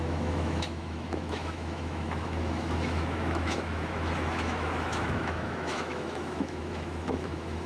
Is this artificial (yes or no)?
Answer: yes